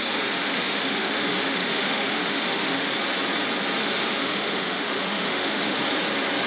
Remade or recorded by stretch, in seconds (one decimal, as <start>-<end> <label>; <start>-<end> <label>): 0.0-0.4 recorded; 0.4-2.9 remade; 2.9-3.8 recorded; 3.8-5.8 remade; 5.8-6.5 recorded